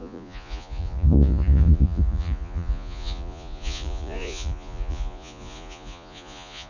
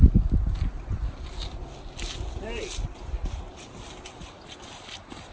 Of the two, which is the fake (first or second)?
first